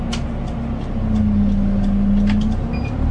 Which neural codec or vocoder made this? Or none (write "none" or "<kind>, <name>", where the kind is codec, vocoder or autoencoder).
none